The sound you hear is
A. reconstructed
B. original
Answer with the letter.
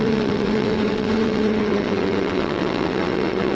A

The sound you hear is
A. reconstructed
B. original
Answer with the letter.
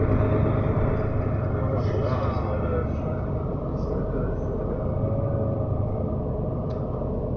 B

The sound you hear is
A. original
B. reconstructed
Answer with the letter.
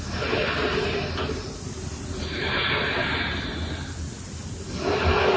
A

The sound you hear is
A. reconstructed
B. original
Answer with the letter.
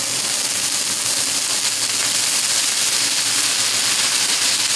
B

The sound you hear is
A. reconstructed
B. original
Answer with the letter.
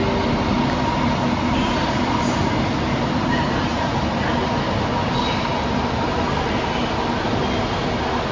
B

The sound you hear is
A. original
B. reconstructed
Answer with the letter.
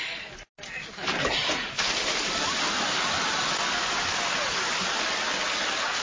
A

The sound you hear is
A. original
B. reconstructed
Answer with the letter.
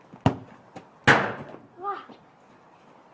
A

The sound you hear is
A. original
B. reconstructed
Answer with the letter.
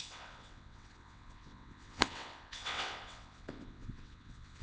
B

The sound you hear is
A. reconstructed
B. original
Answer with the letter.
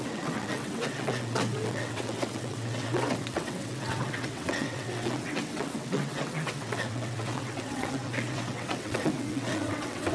A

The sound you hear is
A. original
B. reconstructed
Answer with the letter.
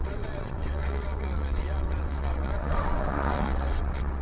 B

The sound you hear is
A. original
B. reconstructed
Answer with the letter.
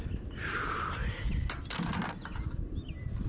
A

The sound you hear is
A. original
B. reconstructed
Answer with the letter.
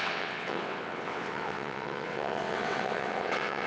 B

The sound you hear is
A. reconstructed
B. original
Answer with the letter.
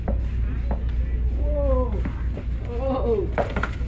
B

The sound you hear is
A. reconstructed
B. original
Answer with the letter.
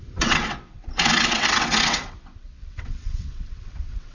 A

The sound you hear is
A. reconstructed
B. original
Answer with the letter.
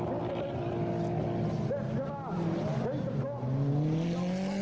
B